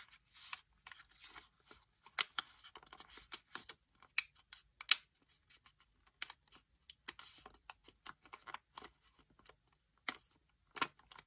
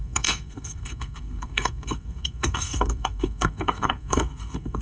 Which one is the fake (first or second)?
second